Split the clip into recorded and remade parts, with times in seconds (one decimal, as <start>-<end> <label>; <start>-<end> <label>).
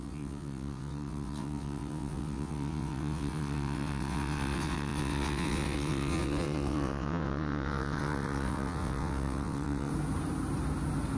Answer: 0.0-9.9 remade; 9.9-11.2 recorded